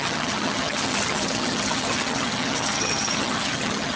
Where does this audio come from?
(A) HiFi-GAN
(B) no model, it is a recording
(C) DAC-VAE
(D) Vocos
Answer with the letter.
A